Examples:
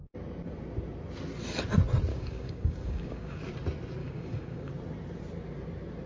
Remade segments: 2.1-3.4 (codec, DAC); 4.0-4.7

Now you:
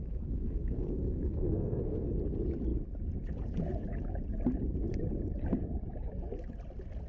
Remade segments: 0.0-2.1 (codec, SNAC)

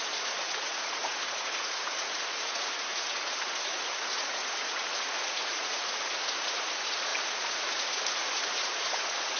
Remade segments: 0.0-9.4 (vocoder, Vocos)

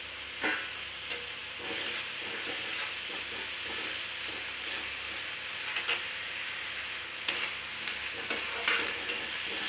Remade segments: none

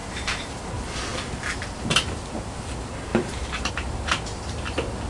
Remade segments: 0.0-0.6 (vocoder, BigVGAN v2); 3.1-3.7